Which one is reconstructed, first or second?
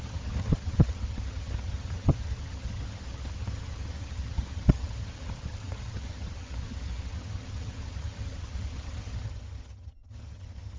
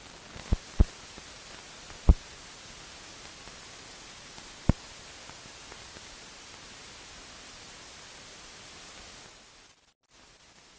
first